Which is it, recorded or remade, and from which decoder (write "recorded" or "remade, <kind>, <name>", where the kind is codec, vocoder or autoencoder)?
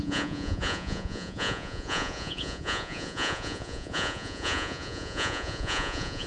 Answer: remade, vocoder, Vocos